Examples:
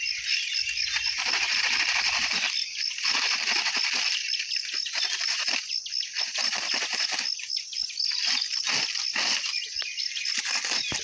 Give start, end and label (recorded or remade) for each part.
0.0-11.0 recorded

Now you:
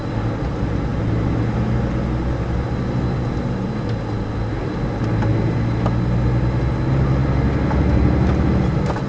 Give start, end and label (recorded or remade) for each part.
0.0-9.1 recorded

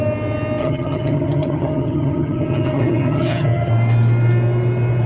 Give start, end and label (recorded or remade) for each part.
0.0-0.6 recorded; 0.6-3.7 remade; 3.7-5.1 recorded

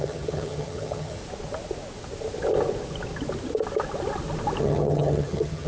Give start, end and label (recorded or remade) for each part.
0.0-1.2 remade; 1.2-4.6 recorded; 4.6-5.7 remade

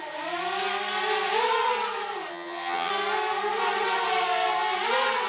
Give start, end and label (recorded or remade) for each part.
0.0-2.3 recorded; 2.3-2.9 remade; 2.9-5.3 recorded

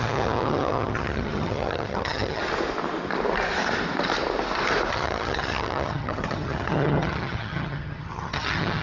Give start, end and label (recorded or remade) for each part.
0.0-2.4 remade; 2.4-4.9 recorded; 4.9-8.8 remade